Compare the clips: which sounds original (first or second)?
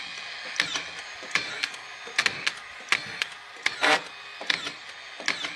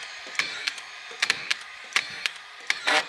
first